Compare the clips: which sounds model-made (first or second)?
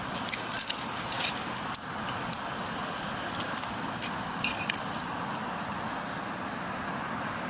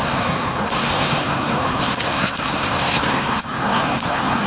second